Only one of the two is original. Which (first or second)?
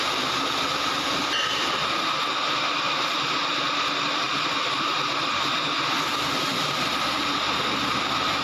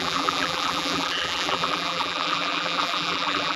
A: first